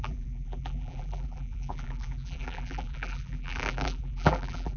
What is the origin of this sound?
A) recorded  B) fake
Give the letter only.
B